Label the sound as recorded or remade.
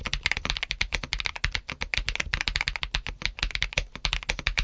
recorded